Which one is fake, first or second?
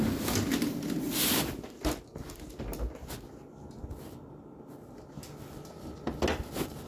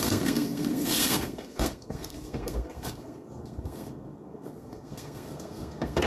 second